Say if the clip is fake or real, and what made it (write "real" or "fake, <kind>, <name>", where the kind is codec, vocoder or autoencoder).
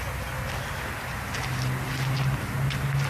real